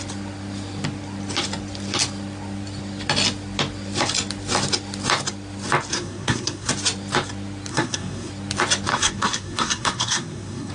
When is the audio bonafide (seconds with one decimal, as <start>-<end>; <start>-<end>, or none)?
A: 0.0-5.9; 6.7-7.7; 8.3-8.9